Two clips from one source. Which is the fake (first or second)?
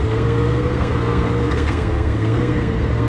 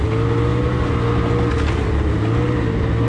first